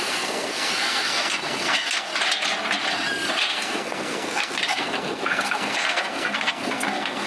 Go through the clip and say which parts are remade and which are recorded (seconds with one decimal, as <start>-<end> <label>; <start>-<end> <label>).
0.0-2.1 remade; 2.1-3.5 recorded; 3.5-7.3 remade